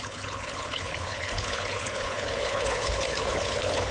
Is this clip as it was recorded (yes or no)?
no